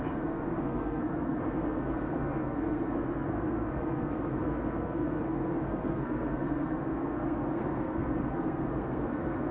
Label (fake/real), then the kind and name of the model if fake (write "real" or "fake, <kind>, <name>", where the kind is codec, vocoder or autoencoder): fake, codec, SNAC